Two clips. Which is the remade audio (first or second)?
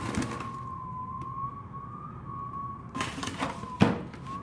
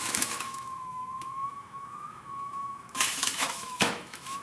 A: second